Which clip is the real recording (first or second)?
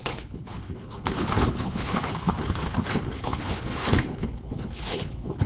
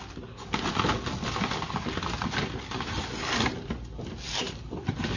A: second